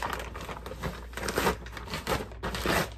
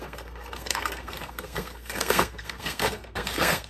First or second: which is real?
first